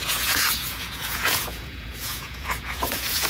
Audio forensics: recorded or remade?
remade